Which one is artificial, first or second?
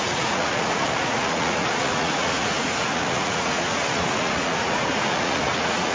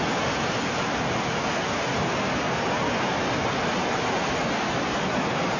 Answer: first